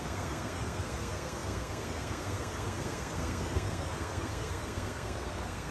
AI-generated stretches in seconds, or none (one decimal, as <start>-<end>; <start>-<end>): 0.0-5.7